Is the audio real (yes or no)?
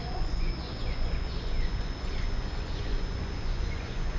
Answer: no